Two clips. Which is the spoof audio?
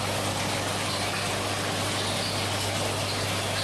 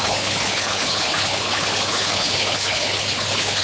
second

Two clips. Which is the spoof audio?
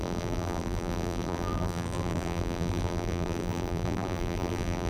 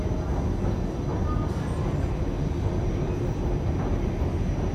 first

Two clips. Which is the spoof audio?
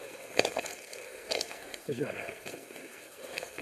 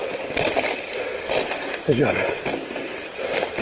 first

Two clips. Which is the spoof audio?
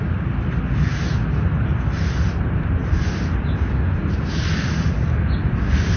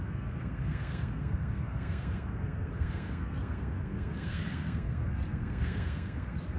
second